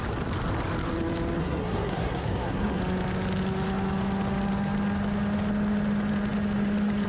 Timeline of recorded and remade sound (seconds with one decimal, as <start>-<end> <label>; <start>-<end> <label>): 0.0-1.4 recorded; 1.4-2.8 remade; 2.8-7.1 recorded